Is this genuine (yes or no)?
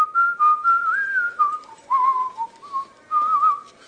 yes